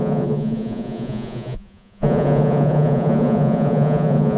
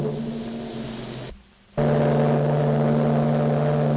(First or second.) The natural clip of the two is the second